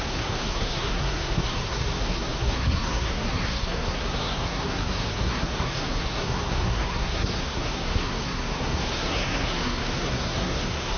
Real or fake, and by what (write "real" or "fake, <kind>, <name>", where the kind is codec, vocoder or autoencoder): fake, codec, SNAC